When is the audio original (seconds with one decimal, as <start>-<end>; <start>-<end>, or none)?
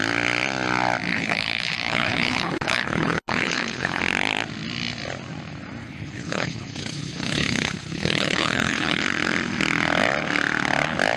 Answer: 0.0-1.1; 4.0-5.8; 9.0-11.2